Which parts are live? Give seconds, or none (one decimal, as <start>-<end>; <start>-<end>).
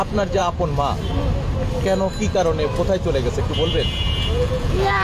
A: 0.4-3.4